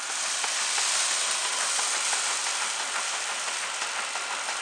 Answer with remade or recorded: recorded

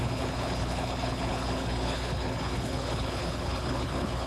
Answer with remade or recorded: remade